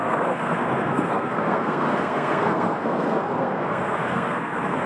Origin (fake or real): fake